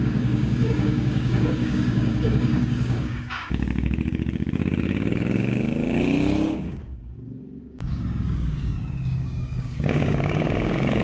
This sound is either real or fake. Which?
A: fake